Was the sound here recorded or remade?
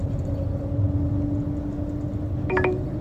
recorded